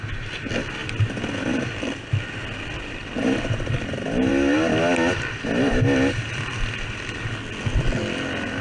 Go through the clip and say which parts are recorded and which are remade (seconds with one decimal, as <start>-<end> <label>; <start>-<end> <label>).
0.0-8.6 recorded